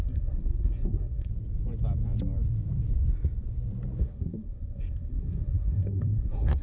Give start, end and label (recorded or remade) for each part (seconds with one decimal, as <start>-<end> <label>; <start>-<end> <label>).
0.0-1.3 remade; 1.3-4.0 recorded; 4.0-6.6 remade